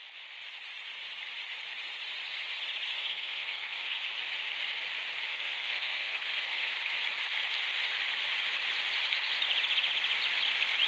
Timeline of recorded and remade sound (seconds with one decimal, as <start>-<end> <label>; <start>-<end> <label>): 0.0-2.9 recorded; 2.9-4.0 remade; 4.0-5.3 recorded; 5.3-6.7 remade; 6.7-10.9 recorded